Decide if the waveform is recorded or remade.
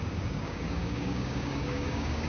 remade